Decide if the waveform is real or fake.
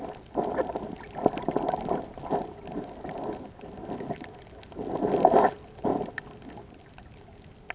real